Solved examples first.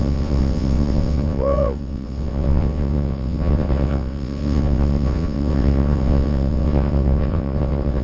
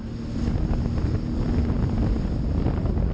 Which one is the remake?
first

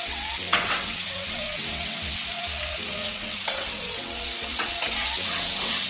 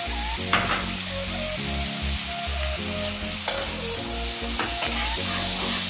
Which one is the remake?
first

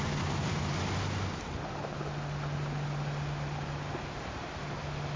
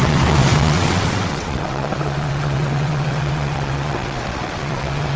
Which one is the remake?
second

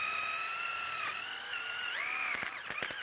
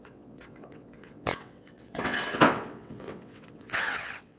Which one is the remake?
second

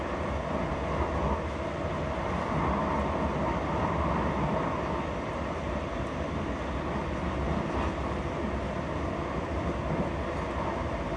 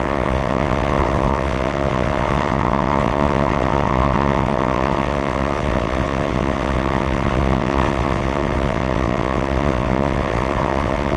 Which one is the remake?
second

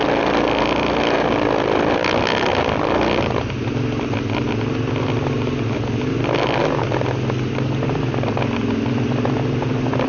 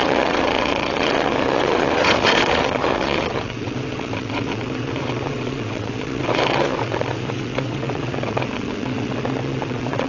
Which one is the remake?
second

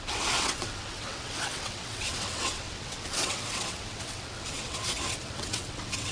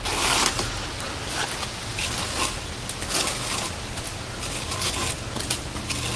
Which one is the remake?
first